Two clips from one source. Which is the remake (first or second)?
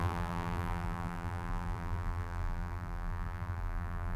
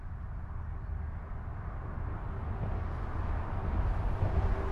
first